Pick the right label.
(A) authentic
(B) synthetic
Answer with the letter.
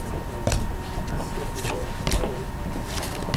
A